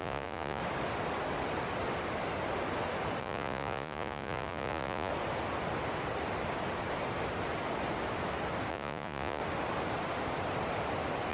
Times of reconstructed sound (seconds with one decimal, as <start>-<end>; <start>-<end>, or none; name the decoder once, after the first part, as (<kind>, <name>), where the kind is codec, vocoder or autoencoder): 0.0-0.6 (vocoder, Vocos); 3.2-5.1; 8.7-9.4